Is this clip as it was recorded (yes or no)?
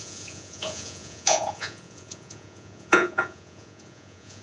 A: no